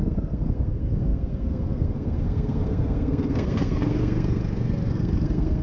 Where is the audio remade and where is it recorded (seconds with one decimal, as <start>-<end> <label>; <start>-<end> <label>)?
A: 0.0-5.6 remade